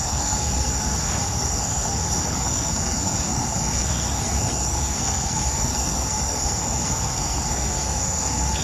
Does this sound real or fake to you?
fake